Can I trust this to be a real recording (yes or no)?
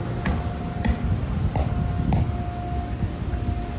yes